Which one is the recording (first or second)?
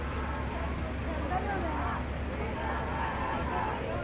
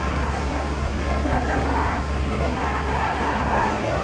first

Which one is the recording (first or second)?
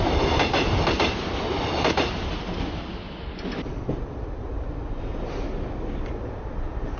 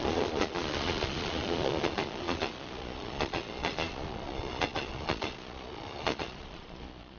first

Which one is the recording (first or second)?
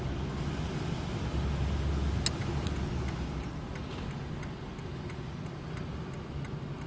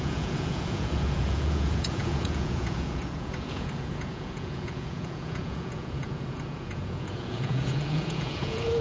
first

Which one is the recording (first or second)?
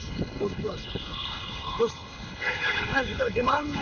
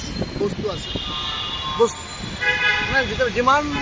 second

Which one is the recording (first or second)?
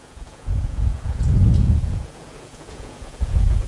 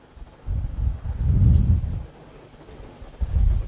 second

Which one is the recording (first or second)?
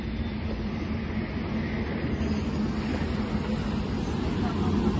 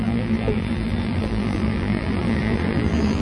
first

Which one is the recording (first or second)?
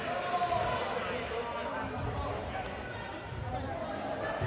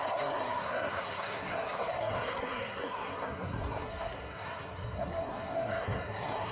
first